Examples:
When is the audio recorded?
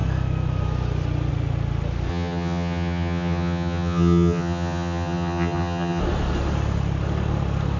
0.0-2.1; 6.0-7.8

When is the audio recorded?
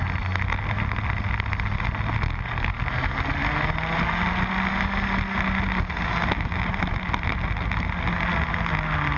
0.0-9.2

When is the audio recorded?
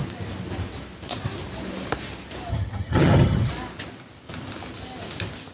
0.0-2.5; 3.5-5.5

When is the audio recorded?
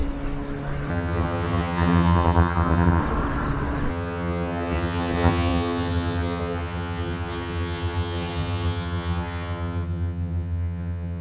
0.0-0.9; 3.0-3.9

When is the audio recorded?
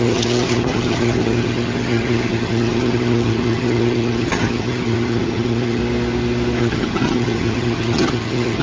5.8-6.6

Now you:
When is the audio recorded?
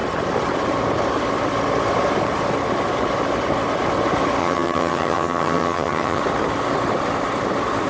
0.0-4.4; 6.2-7.9